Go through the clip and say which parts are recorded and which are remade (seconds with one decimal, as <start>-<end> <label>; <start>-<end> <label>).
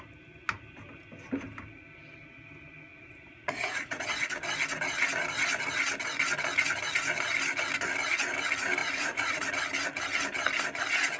0.0-2.9 recorded; 2.9-4.3 remade; 4.3-8.8 recorded; 8.8-9.5 remade; 9.5-11.2 recorded